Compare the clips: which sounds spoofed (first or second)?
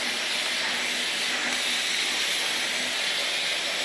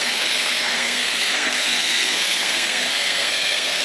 second